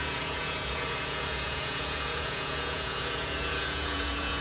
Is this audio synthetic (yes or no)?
yes